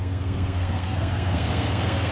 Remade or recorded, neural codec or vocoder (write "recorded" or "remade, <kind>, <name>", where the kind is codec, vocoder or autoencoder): remade, codec, SNAC